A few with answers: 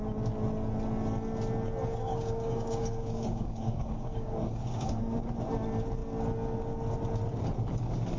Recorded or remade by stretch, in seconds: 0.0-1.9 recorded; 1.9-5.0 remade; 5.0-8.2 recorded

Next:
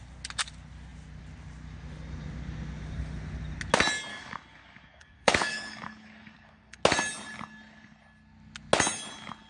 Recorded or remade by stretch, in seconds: 0.0-4.1 recorded; 4.1-6.8 remade; 6.8-9.5 recorded

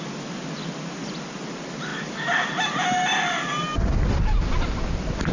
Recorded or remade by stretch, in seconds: 0.0-5.3 recorded

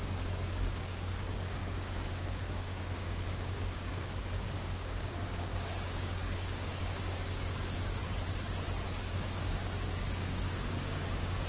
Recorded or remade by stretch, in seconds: 0.0-8.0 remade; 8.0-9.0 recorded; 9.0-11.5 remade